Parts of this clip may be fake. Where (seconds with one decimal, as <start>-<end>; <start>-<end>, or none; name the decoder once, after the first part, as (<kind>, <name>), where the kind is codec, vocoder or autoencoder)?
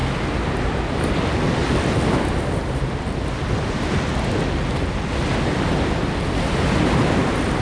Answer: none